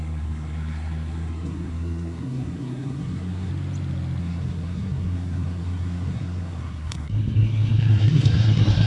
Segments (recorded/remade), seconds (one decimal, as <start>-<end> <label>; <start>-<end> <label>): 0.0-3.5 remade; 3.5-4.2 recorded; 4.2-8.9 remade

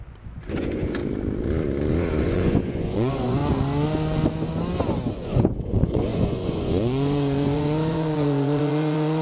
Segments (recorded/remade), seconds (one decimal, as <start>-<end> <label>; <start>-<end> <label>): 0.0-1.0 remade; 1.0-2.2 recorded; 2.2-3.4 remade; 3.4-5.1 recorded; 5.1-9.2 remade

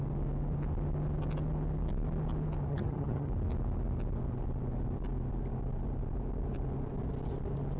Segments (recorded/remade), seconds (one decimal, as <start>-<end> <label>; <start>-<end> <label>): 0.0-2.7 recorded; 2.7-3.3 remade; 3.3-7.8 recorded

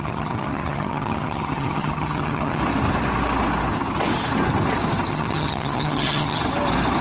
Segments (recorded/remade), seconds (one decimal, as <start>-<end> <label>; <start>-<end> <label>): 0.0-2.6 remade; 2.6-5.1 recorded; 5.1-6.4 remade; 6.4-7.0 recorded